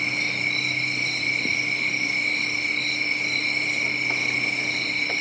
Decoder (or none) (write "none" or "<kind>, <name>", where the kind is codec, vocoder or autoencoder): none